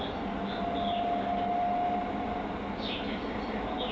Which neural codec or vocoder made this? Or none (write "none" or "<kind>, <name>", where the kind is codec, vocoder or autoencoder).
none